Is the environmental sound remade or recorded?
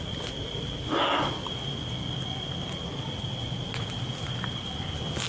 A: recorded